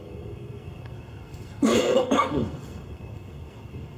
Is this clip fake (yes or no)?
yes